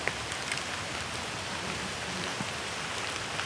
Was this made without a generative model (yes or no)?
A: yes